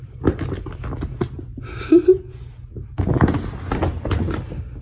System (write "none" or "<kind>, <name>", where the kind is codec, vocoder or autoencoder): none